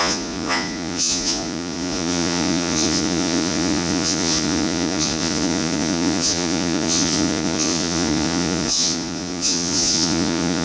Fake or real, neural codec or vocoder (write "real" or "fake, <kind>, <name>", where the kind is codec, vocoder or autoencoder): fake, vocoder, Vocos